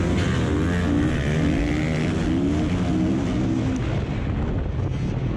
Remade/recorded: recorded